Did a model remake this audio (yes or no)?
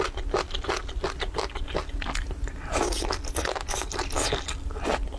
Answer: no